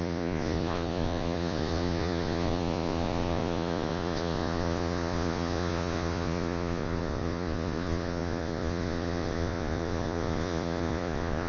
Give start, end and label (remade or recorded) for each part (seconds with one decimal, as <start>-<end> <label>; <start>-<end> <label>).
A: 0.0-11.5 remade